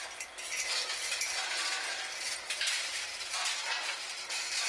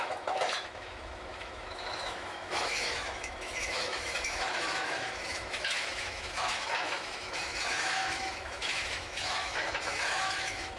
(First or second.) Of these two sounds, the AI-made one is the second